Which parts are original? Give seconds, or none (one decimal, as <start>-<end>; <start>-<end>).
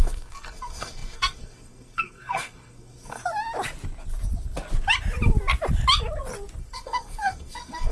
3.2-6.6